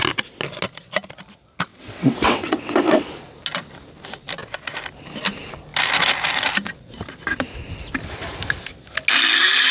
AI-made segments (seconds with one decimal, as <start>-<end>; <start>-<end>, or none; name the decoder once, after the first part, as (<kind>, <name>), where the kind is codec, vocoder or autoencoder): 1.7-3.1 (vocoder, WaveNeXt)